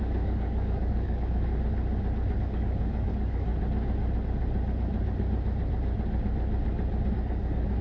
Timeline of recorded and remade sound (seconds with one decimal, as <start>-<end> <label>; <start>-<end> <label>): 0.0-1.5 remade; 1.5-2.4 recorded; 2.4-3.5 remade; 3.5-7.1 recorded; 7.1-7.8 remade